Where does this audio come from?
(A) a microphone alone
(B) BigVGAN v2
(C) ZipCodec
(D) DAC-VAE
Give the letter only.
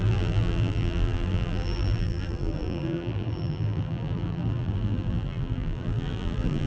B